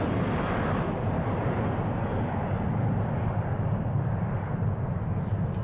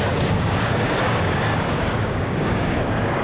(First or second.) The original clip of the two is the first